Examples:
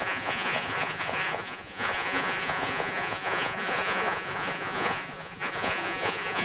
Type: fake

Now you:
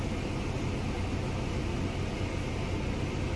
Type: real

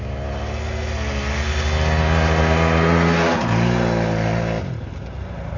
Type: real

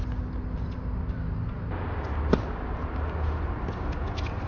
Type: real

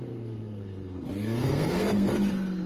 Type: fake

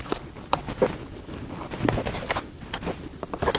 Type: real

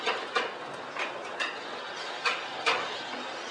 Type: real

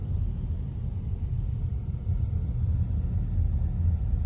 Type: real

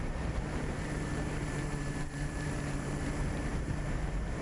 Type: fake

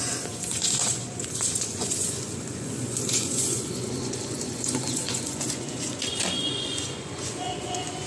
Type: fake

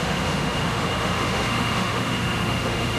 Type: fake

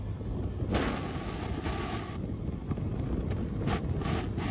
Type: real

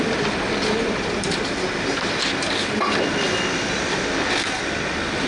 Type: fake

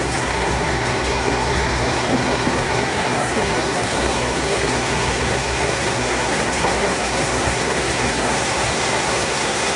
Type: fake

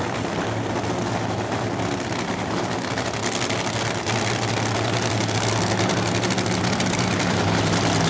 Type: real